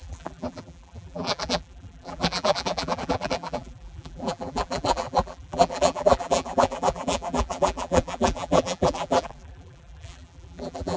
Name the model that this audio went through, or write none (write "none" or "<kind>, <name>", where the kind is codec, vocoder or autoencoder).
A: vocoder, BigVGAN v2